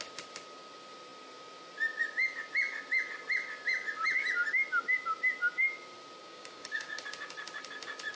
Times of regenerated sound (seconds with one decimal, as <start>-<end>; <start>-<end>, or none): 6.2-7.0